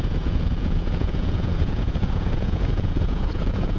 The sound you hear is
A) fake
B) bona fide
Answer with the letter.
A